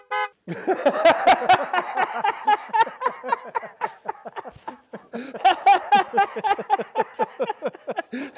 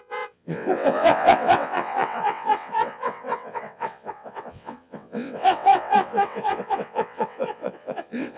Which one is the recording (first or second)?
first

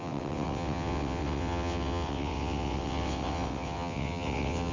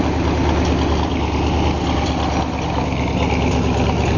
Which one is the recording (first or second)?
second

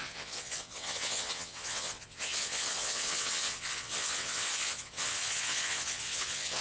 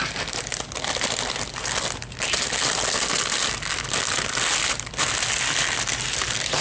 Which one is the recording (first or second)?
second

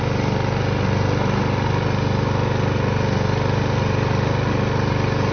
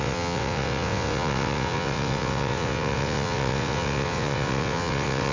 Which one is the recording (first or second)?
first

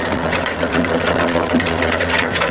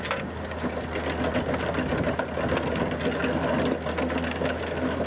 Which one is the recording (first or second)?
second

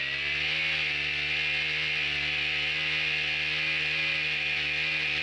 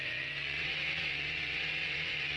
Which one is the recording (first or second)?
first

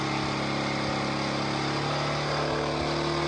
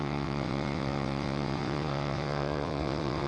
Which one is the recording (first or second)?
first